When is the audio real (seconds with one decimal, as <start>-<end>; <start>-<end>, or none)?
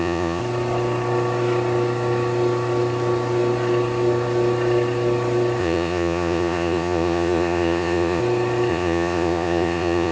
0.4-5.6; 8.2-8.7